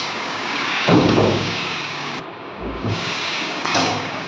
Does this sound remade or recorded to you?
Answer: remade